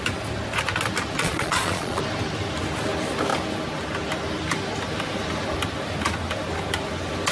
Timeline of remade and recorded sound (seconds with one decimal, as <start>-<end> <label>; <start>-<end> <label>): 0.0-1.2 recorded; 1.2-2.0 remade; 2.0-7.3 recorded